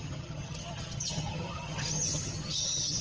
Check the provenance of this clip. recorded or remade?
remade